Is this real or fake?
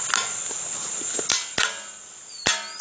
real